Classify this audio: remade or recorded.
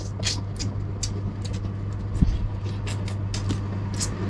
recorded